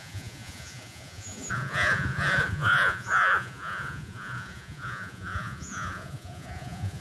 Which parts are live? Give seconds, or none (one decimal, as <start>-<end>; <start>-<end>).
none